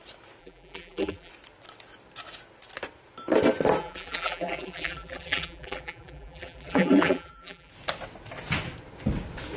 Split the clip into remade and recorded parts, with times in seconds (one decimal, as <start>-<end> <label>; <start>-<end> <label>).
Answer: 0.0-0.4 recorded; 0.4-1.3 remade; 1.3-3.8 recorded; 3.8-7.7 remade; 7.7-9.6 recorded